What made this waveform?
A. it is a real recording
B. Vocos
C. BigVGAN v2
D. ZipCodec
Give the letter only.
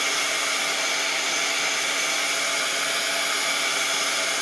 A